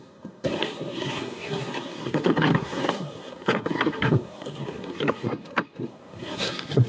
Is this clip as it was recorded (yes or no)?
no